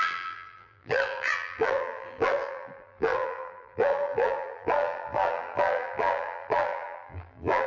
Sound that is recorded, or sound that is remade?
remade